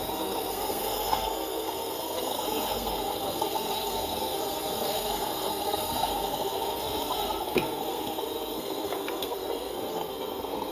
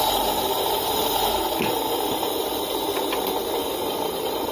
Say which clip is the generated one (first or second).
first